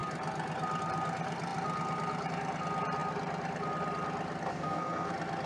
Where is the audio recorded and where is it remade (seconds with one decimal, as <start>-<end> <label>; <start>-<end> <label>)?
0.0-4.5 recorded; 4.5-5.1 remade; 5.1-5.5 recorded